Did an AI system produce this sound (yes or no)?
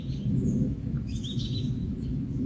yes